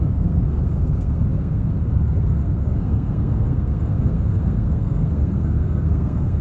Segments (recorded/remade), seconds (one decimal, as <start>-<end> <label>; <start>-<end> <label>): 0.0-6.4 remade